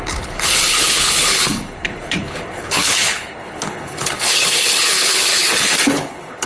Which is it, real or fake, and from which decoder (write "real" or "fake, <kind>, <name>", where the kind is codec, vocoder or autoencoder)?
fake, codec, HILCodec